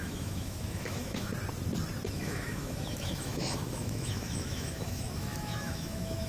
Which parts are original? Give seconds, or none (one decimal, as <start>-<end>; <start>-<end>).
1.3-2.1